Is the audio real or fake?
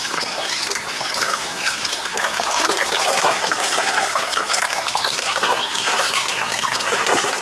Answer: fake